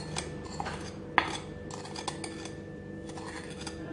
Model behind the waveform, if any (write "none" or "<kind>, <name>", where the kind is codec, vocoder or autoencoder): none